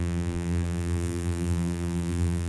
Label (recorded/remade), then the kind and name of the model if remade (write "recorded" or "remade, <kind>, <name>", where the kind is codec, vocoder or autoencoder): remade, vocoder, BigVGAN v2